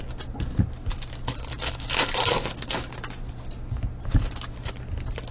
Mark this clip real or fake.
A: real